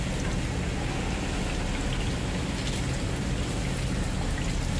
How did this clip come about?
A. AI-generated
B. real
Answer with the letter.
B